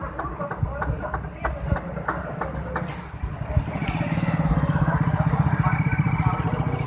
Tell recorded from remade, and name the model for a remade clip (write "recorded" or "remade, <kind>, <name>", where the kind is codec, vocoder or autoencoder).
recorded